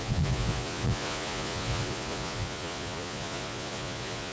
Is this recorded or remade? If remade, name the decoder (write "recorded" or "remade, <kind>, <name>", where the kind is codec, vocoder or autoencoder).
remade, vocoder, Vocos